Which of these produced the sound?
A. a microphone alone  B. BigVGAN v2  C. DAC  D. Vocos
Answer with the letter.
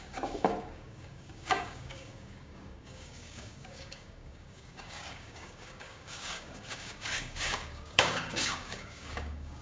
C